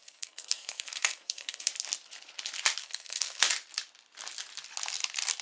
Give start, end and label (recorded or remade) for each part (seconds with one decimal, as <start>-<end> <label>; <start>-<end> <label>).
0.0-1.7 remade; 1.7-2.8 recorded; 2.8-3.5 remade; 3.5-5.4 recorded